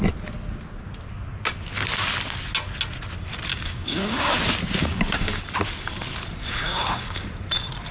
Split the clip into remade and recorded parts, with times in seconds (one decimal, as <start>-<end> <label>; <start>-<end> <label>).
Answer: 0.0-3.5 recorded; 3.5-4.3 remade; 4.3-4.8 recorded; 4.8-5.4 remade; 5.4-6.4 recorded; 6.4-7.3 remade; 7.3-7.9 recorded